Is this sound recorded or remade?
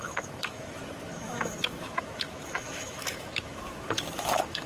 remade